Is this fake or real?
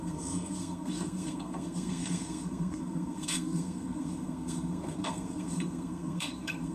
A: fake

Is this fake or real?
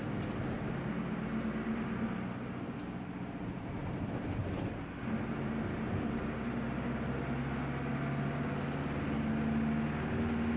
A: real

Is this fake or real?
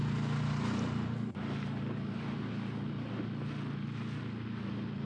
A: real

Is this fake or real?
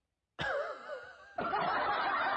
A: real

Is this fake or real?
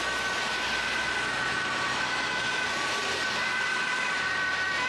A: real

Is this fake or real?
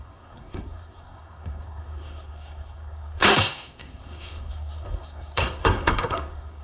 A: fake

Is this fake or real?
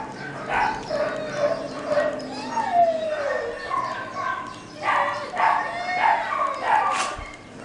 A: real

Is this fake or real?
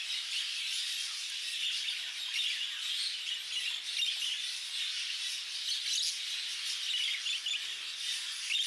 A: real